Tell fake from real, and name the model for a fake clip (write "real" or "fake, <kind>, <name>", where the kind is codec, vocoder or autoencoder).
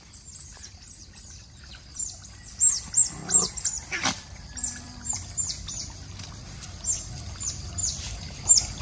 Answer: fake, vocoder, BigVGAN v2